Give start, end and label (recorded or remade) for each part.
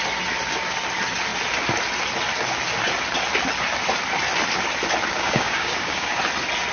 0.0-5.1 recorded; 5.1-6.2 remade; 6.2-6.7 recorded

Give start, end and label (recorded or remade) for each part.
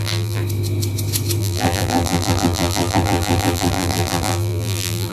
0.0-0.4 remade; 0.4-1.4 recorded; 1.4-5.1 remade